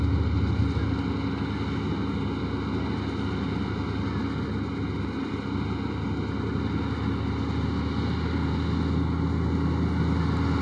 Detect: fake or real real